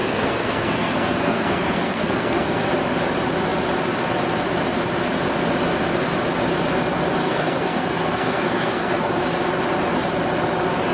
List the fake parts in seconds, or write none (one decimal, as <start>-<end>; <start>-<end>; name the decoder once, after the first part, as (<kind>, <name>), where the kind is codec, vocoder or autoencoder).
0.0-2.6 (codec, SNAC); 7.2-9.1